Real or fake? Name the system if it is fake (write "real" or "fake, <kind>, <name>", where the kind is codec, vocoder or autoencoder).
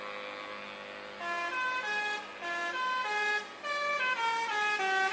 real